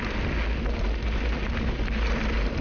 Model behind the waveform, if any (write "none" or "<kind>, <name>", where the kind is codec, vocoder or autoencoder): none